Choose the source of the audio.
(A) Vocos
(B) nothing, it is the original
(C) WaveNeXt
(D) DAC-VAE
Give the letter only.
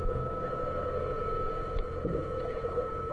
D